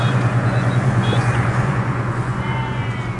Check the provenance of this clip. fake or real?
fake